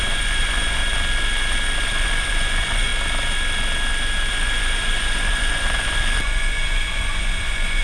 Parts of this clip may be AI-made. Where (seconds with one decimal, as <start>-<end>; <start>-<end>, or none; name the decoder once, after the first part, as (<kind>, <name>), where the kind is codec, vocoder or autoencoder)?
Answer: 0.0-0.8 (vocoder, Vocos); 1.8-2.9; 4.3-7.8